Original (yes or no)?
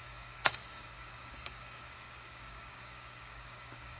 no